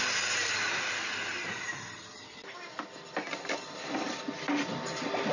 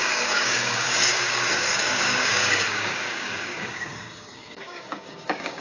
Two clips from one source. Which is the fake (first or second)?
second